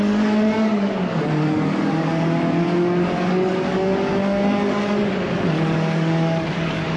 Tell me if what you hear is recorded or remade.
remade